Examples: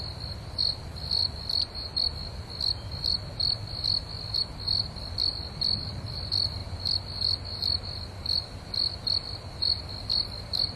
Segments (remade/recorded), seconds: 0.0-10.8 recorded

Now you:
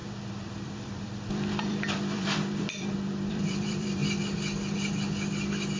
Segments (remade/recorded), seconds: 0.0-4.0 remade; 4.0-5.8 recorded

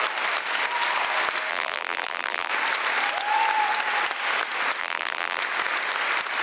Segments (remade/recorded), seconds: 0.0-1.5 recorded; 1.5-2.5 remade; 2.5-4.8 recorded; 4.8-5.4 remade; 5.4-6.4 recorded

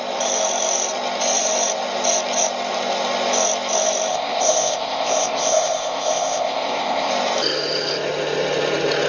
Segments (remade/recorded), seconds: 0.0-4.1 recorded; 4.1-7.1 remade; 7.1-9.1 recorded

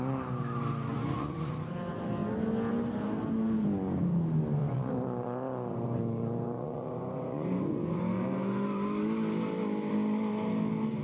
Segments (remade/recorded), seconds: 0.0-0.9 recorded; 0.9-1.5 remade; 1.5-4.6 recorded; 4.6-8.0 remade; 8.0-11.0 recorded

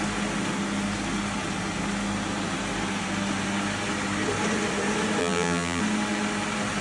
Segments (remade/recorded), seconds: 0.0-5.2 recorded; 5.2-5.8 remade; 5.8-6.8 recorded

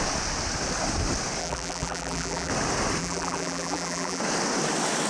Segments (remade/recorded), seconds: 0.0-1.4 recorded; 1.4-2.5 remade; 2.5-3.0 recorded; 3.0-4.2 remade; 4.2-5.1 recorded